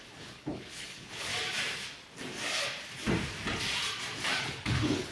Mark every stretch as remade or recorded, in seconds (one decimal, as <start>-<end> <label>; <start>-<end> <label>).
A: 0.0-1.3 remade; 1.3-4.4 recorded; 4.4-5.1 remade